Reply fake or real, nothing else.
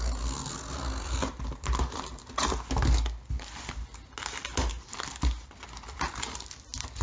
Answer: real